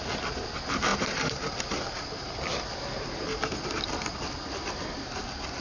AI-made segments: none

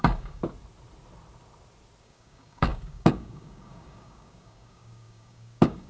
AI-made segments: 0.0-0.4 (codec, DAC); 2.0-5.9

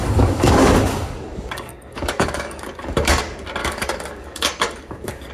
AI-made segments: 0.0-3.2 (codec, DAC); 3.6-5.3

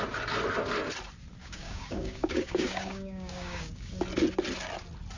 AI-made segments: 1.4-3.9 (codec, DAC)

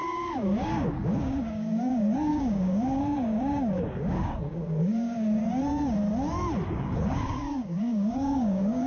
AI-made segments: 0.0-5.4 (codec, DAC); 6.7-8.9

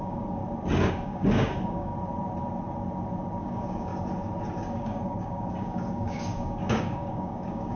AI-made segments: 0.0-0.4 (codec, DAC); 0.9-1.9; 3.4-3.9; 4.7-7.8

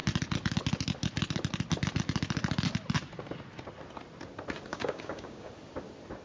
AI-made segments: 4.7-5.5 (codec, DAC)

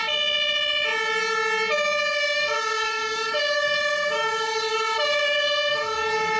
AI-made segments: 2.1-5.9 (codec, DAC)